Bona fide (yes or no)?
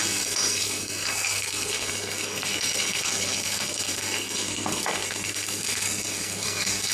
no